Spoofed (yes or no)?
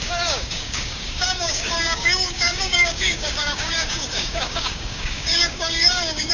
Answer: yes